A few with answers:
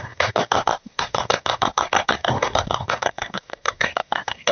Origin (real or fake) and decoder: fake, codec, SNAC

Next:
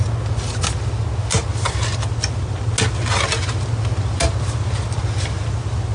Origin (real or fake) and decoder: real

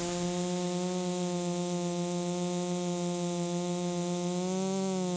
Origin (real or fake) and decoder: real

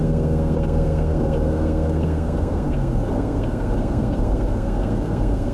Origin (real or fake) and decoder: fake, codec, SNAC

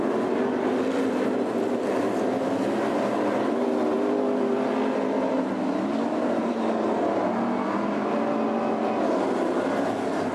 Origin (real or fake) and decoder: real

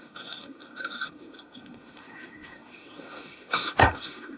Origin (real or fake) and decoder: fake, codec, SNAC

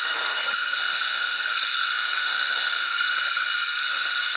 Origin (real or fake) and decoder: fake, codec, SNAC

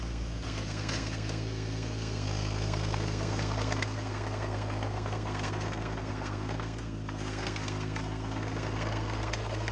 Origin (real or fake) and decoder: fake, codec, SNAC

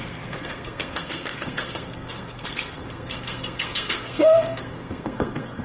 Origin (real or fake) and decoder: fake, codec, SNAC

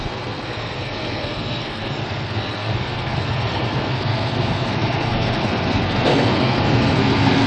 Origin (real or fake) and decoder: fake, codec, SNAC